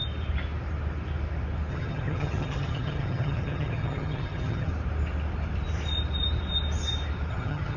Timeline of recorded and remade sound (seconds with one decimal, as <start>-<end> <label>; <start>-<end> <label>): 0.0-1.7 recorded; 1.7-4.7 remade; 4.7-7.3 recorded; 7.3-7.8 remade